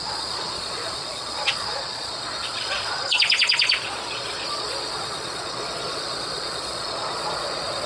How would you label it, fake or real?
fake